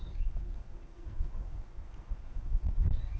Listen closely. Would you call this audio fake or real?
fake